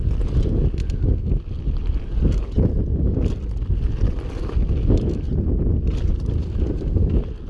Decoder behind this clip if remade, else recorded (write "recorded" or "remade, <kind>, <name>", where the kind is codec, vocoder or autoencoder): recorded